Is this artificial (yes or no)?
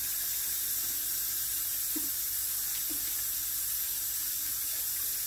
no